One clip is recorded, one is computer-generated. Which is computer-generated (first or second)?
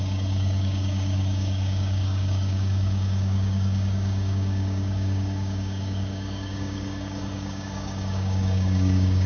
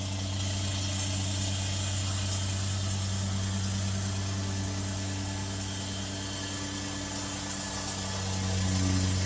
first